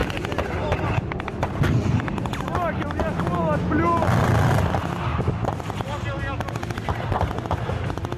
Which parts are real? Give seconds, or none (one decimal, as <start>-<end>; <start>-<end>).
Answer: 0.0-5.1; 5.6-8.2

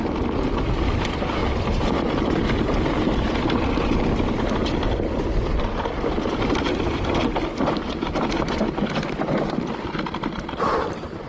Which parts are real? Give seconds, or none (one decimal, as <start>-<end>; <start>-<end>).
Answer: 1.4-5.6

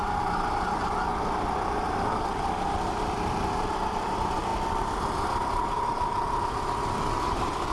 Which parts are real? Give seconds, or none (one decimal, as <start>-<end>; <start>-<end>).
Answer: 0.0-7.7

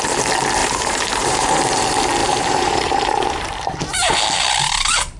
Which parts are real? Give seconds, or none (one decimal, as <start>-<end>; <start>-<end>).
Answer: 0.0-0.6; 1.6-2.2